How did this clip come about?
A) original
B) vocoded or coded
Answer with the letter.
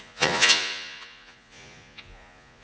B